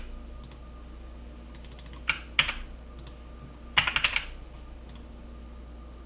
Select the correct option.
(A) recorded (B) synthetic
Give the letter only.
A